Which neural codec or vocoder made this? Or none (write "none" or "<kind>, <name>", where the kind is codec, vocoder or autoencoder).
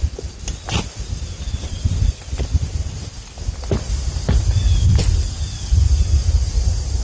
none